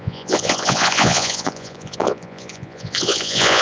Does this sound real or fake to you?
fake